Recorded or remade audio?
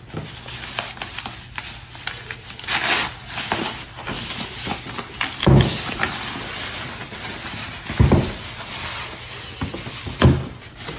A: recorded